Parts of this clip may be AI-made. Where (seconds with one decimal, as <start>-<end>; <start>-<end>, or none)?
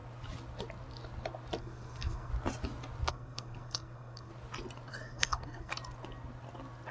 1.6-2.3; 3.1-4.3; 4.9-5.7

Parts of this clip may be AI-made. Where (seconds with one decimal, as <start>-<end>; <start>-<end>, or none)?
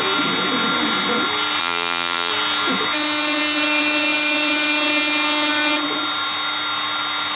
1.6-2.3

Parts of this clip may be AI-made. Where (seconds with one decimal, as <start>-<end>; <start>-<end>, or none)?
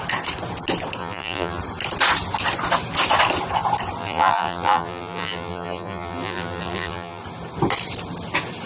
1.0-1.6; 4.0-7.2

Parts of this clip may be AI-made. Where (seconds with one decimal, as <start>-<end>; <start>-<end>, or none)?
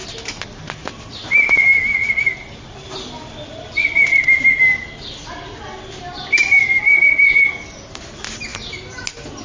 none